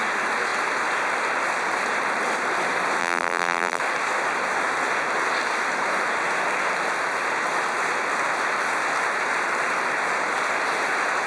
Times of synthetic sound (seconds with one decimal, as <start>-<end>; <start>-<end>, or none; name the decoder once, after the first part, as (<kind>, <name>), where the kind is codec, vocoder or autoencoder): 3.0-3.8 (vocoder, BigVGAN v2)